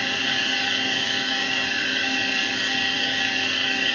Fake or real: fake